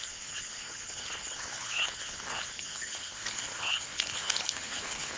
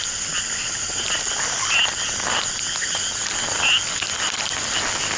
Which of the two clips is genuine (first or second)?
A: second